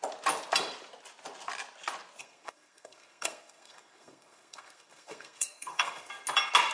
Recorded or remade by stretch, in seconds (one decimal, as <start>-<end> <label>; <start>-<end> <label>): 0.0-2.2 recorded; 2.2-6.1 remade; 6.1-6.7 recorded